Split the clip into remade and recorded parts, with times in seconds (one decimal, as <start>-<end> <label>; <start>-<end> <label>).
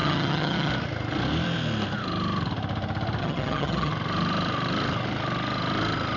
0.0-0.7 remade; 0.7-3.2 recorded; 3.2-3.9 remade; 3.9-6.2 recorded